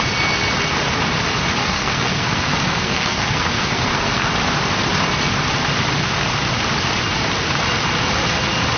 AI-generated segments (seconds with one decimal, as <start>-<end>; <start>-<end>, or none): 1.6-4.3